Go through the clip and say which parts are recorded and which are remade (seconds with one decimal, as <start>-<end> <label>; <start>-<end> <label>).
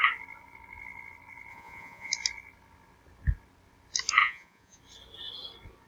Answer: 0.0-1.5 recorded; 1.5-2.1 remade; 2.1-4.2 recorded; 4.2-4.8 remade; 4.8-5.9 recorded